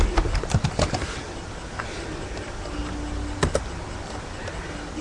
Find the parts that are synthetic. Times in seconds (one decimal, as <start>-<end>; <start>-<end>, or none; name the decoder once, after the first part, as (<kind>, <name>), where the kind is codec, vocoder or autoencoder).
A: none